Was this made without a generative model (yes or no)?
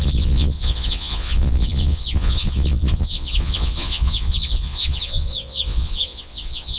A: no